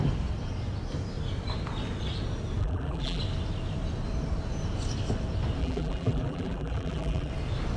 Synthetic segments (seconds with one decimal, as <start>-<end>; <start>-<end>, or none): 2.6-3.2; 5.6-7.3